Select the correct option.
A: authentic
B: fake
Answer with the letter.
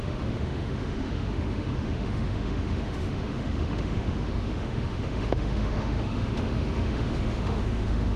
B